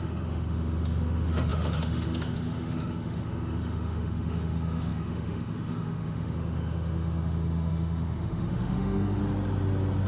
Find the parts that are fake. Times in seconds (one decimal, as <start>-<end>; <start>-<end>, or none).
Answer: 0.0-9.2